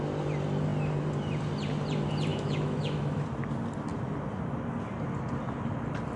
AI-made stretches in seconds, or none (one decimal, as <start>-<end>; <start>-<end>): 2.3-3.2